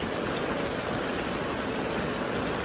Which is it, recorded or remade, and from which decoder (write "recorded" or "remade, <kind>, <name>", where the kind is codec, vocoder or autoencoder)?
recorded